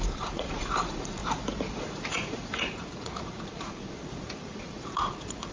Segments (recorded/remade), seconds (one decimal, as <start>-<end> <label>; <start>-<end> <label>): 0.0-1.2 remade; 1.2-1.7 recorded; 1.7-5.5 remade

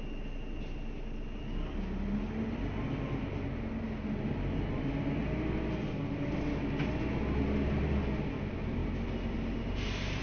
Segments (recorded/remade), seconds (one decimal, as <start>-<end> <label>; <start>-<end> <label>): 0.0-10.2 recorded

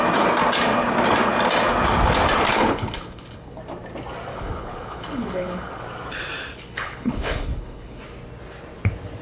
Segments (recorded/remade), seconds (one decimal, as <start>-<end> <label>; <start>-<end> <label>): 0.0-2.5 recorded; 2.5-3.6 remade; 3.6-4.3 recorded; 4.3-5.8 remade; 5.8-6.5 recorded; 6.5-8.0 remade; 8.0-9.2 recorded

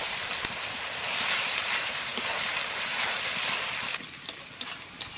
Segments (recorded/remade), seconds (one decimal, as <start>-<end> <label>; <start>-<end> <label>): 0.0-3.9 remade; 3.9-4.4 recorded; 4.4-5.2 remade

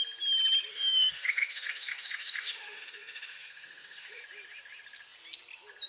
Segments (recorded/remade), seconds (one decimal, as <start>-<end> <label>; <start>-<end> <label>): 0.0-0.7 recorded; 0.7-4.2 remade; 4.2-5.9 recorded

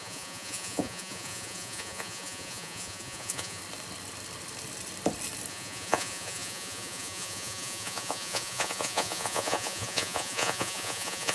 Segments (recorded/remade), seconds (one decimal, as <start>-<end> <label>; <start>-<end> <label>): 0.0-3.6 remade; 3.6-5.5 recorded; 5.5-11.3 remade